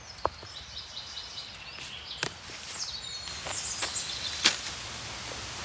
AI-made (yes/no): no